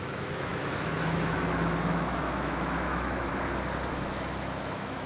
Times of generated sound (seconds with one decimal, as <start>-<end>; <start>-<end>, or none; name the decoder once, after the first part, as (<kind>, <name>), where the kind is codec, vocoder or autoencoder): 0.0-3.3 (autoencoder, DAC-VAE); 3.9-5.1